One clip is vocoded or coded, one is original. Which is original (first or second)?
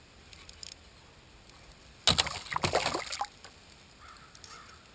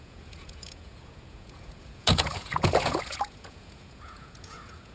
first